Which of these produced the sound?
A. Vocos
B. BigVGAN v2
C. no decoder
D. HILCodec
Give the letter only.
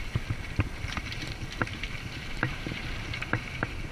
B